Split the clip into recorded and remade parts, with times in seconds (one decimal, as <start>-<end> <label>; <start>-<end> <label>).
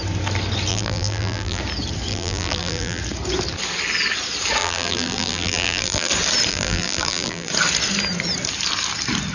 0.0-0.7 recorded; 0.7-1.6 remade; 1.6-2.1 recorded; 2.1-3.0 remade; 3.0-4.6 recorded; 4.6-6.1 remade; 6.1-6.5 recorded; 6.5-7.5 remade; 7.5-9.3 recorded